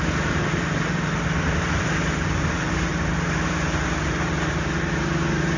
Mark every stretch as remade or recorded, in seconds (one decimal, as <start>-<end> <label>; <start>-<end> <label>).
0.0-5.6 recorded